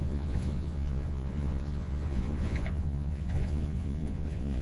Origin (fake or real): fake